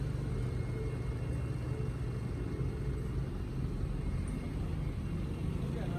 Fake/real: real